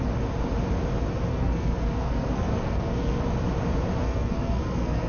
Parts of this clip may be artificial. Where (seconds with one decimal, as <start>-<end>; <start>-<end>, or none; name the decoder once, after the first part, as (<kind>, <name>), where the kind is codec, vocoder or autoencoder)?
1.3-3.2 (codec, SNAC); 4.0-5.1